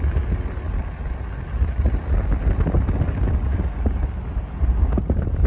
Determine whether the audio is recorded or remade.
recorded